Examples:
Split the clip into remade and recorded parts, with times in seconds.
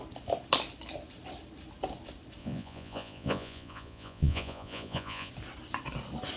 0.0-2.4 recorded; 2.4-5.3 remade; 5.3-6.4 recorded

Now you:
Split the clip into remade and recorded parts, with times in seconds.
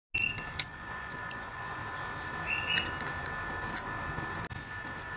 0.0-0.6 recorded; 0.6-1.8 remade; 1.8-5.2 recorded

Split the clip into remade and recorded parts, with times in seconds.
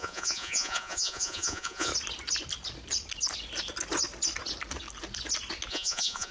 0.0-1.9 remade; 1.9-5.7 recorded; 5.7-6.3 remade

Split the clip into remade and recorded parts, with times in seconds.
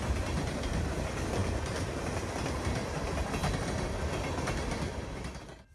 0.0-5.7 recorded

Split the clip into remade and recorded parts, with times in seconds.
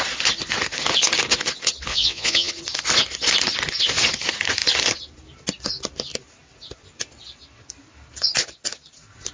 0.0-1.9 recorded; 1.9-2.5 remade; 2.5-9.3 recorded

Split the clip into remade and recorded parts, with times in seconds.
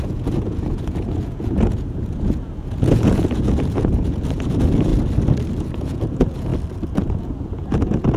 0.0-4.9 remade; 4.9-5.6 recorded; 5.6-6.5 remade; 6.5-7.0 recorded; 7.0-8.2 remade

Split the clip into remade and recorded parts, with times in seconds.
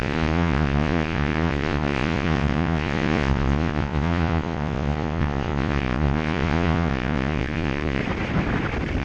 0.0-8.0 remade; 8.0-9.0 recorded